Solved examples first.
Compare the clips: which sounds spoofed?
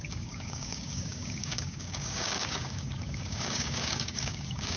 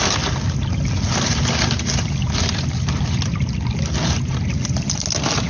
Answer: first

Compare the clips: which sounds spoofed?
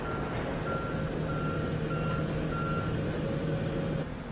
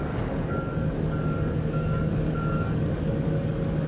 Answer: second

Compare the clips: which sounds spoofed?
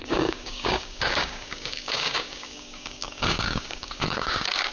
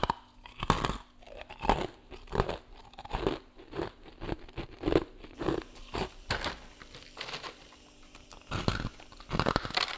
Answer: first